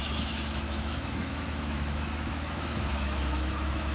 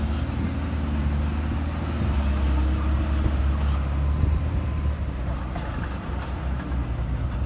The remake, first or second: first